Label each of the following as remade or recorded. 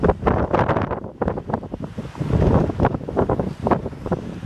recorded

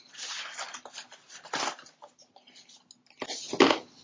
recorded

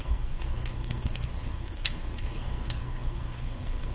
remade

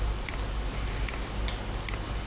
recorded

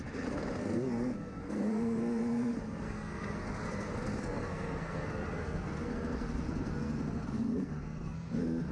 remade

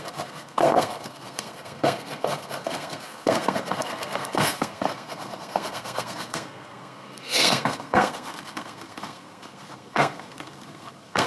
remade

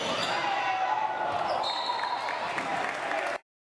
recorded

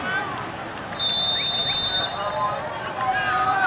recorded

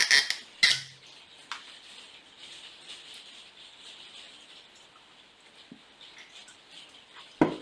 recorded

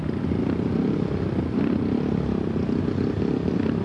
recorded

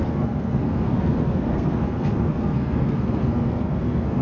remade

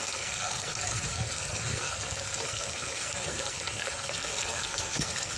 remade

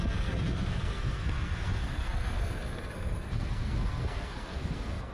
remade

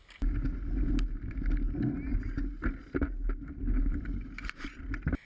recorded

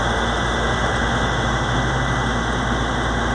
recorded